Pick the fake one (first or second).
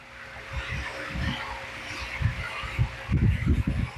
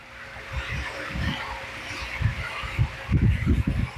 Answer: second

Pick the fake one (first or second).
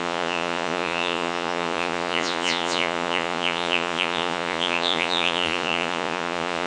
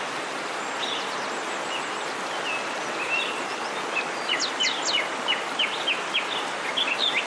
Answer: first